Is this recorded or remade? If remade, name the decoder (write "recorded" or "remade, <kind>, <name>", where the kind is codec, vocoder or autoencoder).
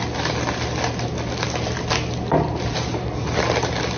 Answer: recorded